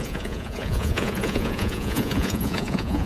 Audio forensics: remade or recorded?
remade